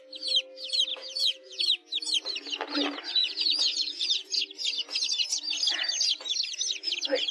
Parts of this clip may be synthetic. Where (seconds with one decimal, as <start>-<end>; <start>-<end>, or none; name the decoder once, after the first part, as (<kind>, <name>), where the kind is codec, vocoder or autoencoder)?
0.9-1.6 (vocoder, Vocos); 3.2-4.4